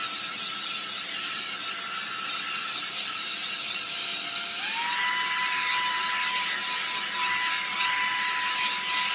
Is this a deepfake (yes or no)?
no